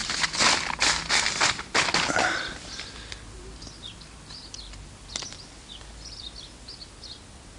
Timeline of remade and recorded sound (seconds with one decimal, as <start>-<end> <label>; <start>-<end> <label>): 0.0-7.6 recorded